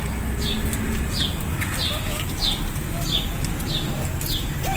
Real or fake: real